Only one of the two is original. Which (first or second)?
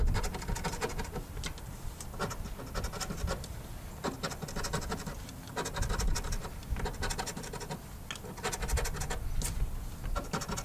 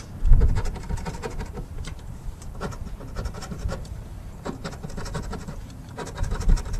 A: first